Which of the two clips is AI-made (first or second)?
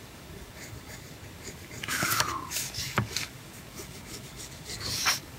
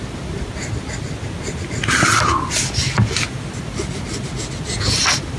first